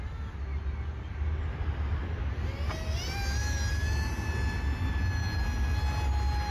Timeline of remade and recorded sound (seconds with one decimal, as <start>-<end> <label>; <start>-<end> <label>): 0.0-6.5 recorded